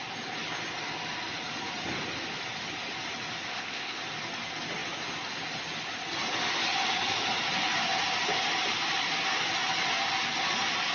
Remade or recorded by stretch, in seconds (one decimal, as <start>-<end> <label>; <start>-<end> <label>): 0.0-3.5 recorded; 3.5-4.0 remade; 4.0-10.9 recorded

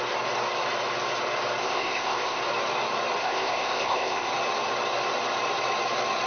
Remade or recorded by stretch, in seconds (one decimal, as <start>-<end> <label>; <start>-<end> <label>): 0.0-1.6 recorded; 1.6-2.4 remade; 2.4-3.2 recorded; 3.2-4.3 remade; 4.3-6.3 recorded

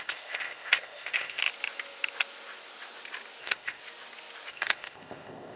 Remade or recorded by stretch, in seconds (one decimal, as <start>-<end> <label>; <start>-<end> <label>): 0.0-1.4 remade; 1.4-3.4 recorded; 3.4-3.8 remade; 3.8-4.5 recorded; 4.5-5.6 remade

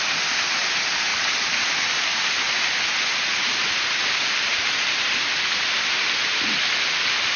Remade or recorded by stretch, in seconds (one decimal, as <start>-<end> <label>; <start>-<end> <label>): 0.0-7.4 recorded